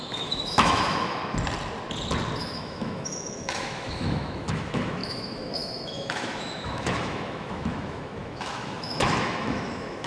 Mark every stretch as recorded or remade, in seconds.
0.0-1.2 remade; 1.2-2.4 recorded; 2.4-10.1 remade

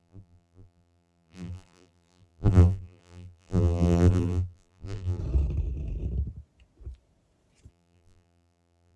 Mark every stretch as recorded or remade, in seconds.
0.0-5.2 remade; 5.2-7.7 recorded; 7.7-9.0 remade

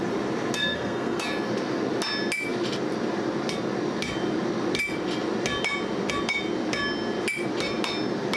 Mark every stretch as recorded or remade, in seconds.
0.0-0.6 recorded; 0.6-1.2 remade; 1.2-8.4 recorded

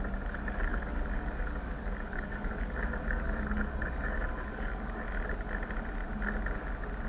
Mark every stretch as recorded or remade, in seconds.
0.0-0.7 recorded; 0.7-5.0 remade; 5.0-7.1 recorded

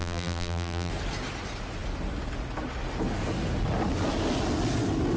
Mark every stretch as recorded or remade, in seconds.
0.0-0.9 remade; 0.9-5.2 recorded

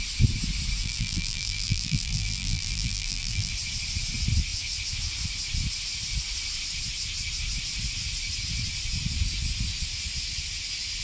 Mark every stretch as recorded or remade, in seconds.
0.0-0.8 recorded; 0.8-3.5 remade; 3.5-11.0 recorded

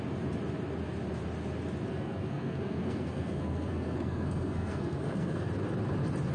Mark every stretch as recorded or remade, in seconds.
0.0-1.9 recorded; 1.9-5.5 remade; 5.5-6.3 recorded